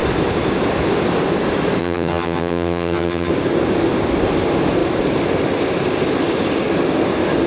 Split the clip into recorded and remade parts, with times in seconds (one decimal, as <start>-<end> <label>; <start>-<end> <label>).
0.0-1.8 recorded; 1.8-3.3 remade; 3.3-7.5 recorded